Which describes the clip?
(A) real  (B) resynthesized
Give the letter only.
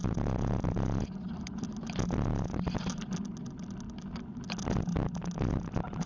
A